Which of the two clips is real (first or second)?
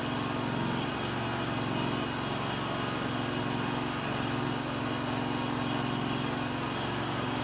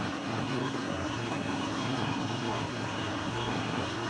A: first